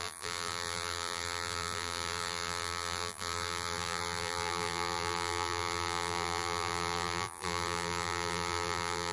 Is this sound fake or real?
fake